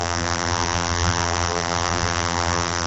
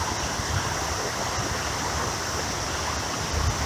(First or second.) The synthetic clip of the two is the first